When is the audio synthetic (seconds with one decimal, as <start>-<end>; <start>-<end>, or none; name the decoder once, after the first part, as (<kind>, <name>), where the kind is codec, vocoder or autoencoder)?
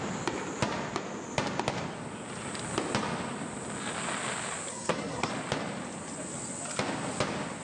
4.7-5.3 (codec, SNAC)